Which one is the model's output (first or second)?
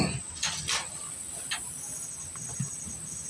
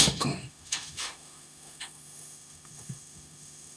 second